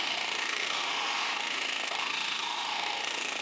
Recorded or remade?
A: remade